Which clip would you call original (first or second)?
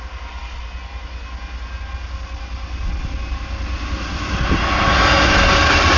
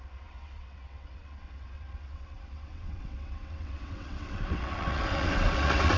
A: first